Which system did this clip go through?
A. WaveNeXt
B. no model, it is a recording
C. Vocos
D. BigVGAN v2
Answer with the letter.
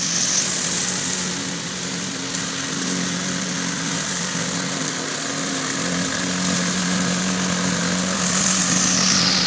B